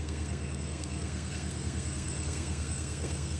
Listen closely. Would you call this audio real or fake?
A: fake